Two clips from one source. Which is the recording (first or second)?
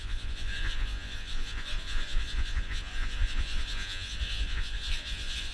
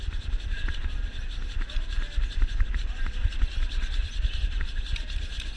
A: second